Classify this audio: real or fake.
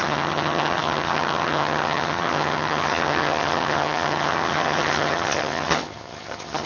fake